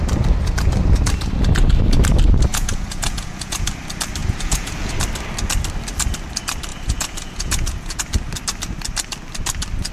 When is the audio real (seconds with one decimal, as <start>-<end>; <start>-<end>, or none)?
0.0-2.5; 3.7-4.2; 4.9-6.7; 8.0-9.9